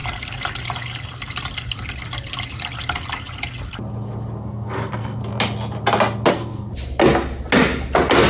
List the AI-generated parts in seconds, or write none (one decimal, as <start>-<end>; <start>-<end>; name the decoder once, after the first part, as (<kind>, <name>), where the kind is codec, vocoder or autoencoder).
4.4-5.2 (codec, SNAC); 6.3-6.7